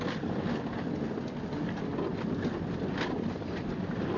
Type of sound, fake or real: real